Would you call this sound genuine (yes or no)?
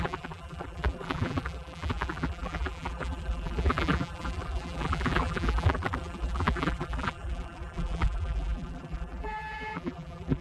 no